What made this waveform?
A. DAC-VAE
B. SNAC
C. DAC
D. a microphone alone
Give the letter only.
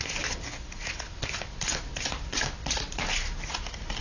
D